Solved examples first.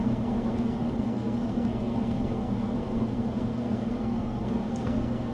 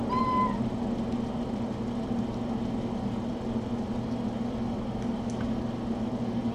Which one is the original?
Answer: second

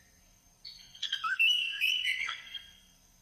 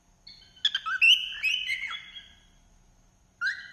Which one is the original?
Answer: second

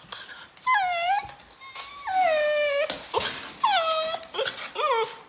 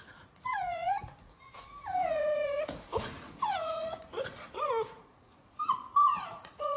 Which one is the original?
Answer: first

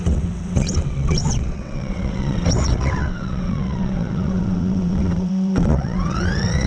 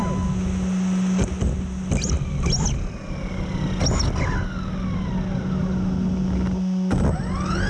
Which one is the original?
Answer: second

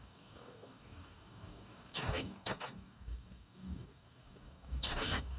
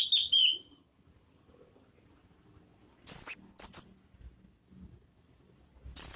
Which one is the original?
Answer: second